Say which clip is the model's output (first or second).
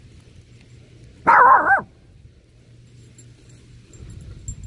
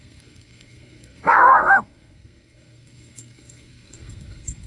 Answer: second